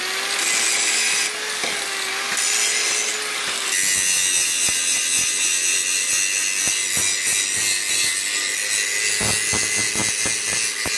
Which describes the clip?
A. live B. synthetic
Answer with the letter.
A